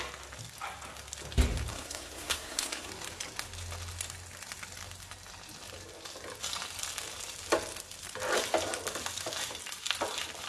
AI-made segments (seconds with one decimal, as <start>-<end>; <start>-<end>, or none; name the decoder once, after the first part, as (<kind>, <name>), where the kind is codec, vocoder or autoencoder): 1.7-2.9 (codec, SNAC)